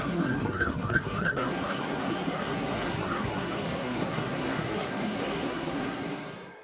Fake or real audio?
fake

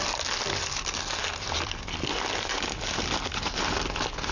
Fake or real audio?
real